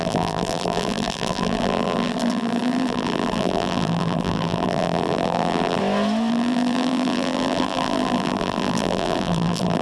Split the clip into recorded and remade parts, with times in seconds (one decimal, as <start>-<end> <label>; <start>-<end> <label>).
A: 0.0-5.8 remade; 5.8-6.3 recorded; 6.3-9.8 remade